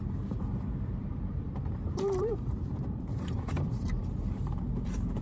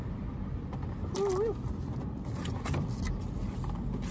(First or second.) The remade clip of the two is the first